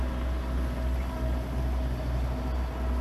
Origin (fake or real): real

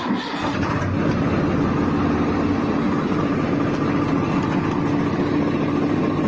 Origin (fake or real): real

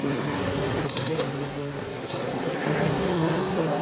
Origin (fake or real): fake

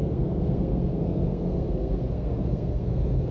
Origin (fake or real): fake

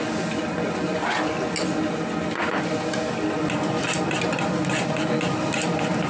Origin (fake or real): real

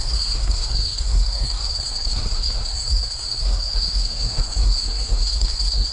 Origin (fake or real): fake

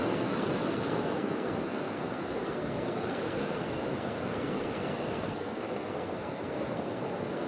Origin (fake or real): fake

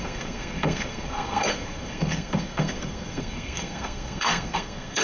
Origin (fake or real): fake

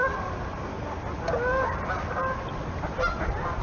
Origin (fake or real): real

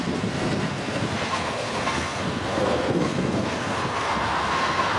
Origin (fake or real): fake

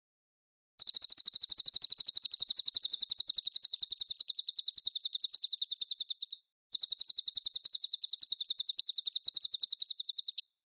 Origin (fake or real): real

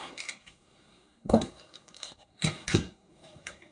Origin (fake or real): fake